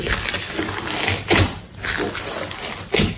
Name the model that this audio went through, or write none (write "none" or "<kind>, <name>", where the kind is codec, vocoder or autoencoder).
none